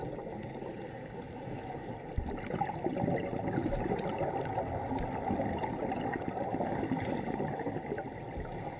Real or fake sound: real